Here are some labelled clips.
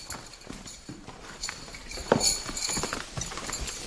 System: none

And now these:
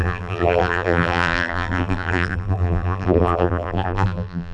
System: vocoder, BigVGAN v2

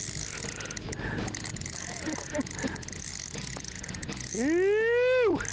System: none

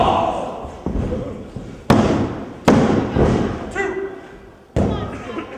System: none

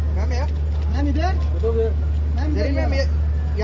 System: none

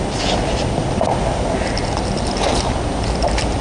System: none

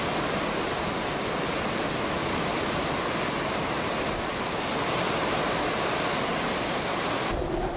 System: none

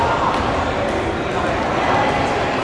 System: none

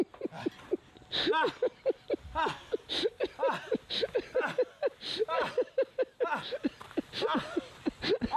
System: none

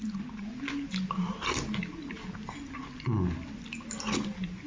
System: none